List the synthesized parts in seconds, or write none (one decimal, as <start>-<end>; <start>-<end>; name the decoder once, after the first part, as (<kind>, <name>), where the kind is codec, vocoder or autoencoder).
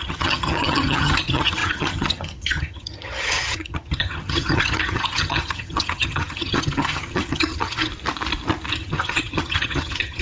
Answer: 0.0-7.9 (vocoder, HiFi-GAN); 8.7-10.2